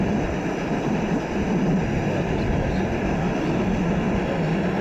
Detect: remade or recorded recorded